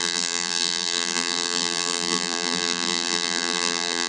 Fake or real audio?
fake